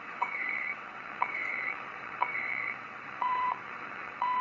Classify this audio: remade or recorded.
remade